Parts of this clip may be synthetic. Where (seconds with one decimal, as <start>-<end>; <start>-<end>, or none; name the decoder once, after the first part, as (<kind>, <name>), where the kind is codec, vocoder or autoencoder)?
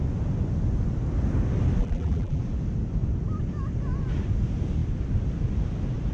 1.8-2.4 (vocoder, BigVGAN v2)